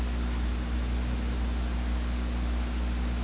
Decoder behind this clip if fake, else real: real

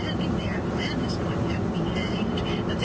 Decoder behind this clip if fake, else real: real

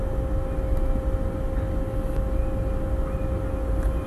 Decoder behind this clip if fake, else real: real